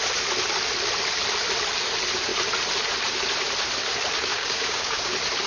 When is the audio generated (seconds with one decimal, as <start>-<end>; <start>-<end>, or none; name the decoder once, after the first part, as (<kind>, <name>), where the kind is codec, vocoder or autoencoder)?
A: 4.3-5.1 (codec, DAC)